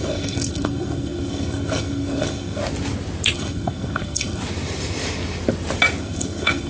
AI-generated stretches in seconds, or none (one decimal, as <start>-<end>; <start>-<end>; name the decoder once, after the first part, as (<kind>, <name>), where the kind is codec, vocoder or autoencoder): 0.0-2.6 (codec, SNAC); 3.3-4.4; 6.0-6.7